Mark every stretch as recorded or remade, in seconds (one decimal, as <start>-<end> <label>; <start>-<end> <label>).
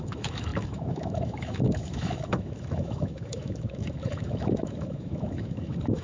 0.0-6.0 remade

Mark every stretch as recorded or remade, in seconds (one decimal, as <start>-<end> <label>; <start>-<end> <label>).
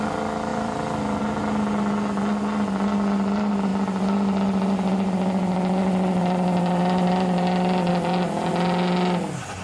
0.0-0.5 recorded; 0.5-1.2 remade; 1.2-9.6 recorded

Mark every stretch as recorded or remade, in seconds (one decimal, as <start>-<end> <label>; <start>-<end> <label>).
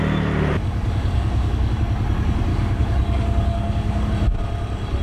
0.0-0.6 recorded; 0.6-1.7 remade; 1.7-2.5 recorded; 2.5-4.1 remade; 4.1-5.0 recorded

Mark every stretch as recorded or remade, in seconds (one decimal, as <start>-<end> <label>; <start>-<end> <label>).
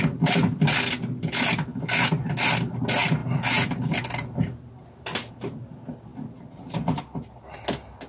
0.0-8.1 recorded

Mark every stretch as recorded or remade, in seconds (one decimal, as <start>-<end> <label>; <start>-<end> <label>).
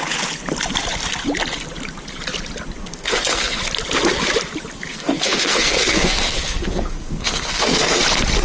0.0-2.8 recorded; 2.8-3.6 remade; 3.6-4.9 recorded; 4.9-8.0 remade; 8.0-8.4 recorded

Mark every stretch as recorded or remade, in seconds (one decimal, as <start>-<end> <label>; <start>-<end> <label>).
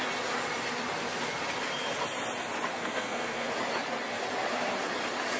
0.0-2.7 recorded; 2.7-3.5 remade; 3.5-5.4 recorded